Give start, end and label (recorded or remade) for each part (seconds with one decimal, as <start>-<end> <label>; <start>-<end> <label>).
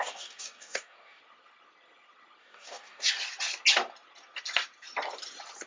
0.0-1.2 remade; 1.2-2.4 recorded; 2.4-3.1 remade; 3.1-5.7 recorded